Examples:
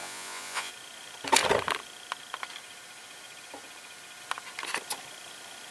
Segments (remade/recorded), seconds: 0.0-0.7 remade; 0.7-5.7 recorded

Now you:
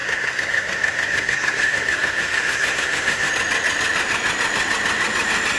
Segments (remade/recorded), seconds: 0.0-3.3 remade; 3.3-5.6 recorded

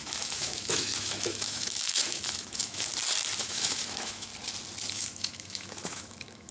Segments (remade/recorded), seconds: 0.0-2.9 remade; 2.9-3.4 recorded; 3.4-4.3 remade; 4.3-4.9 recorded; 4.9-6.5 remade